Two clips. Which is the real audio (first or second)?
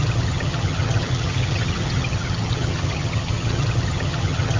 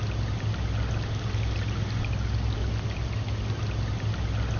second